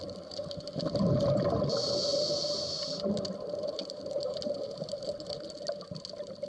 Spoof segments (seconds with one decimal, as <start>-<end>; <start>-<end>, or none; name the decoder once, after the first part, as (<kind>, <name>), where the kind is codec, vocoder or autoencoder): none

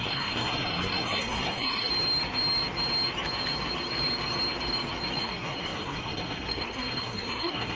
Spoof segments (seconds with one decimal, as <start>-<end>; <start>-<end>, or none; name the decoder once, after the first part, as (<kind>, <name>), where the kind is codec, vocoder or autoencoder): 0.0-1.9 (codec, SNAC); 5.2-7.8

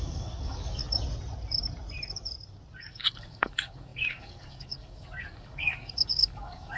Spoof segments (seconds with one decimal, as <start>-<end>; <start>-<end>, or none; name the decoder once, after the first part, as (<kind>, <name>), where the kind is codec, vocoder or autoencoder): 0.0-0.8 (codec, DAC); 2.8-6.8

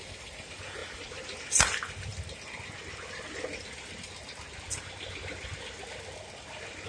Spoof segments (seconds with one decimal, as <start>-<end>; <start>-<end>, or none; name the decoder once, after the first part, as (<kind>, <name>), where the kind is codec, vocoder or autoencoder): 0.8-1.4 (vocoder, BigVGAN v2)

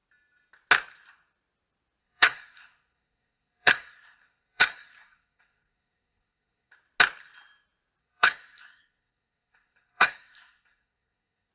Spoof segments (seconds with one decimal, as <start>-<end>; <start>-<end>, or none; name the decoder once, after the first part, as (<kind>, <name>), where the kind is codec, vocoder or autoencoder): 2.0-6.7 (codec, SNAC); 8.0-11.5